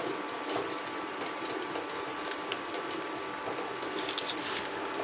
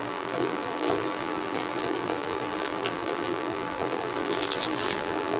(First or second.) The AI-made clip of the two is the second